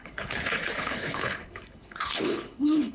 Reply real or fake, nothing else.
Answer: fake